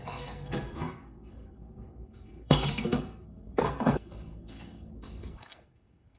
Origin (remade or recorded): remade